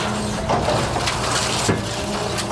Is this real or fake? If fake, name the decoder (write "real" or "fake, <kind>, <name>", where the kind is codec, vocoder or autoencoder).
real